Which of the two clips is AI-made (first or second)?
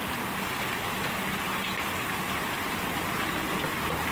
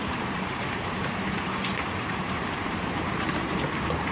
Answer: second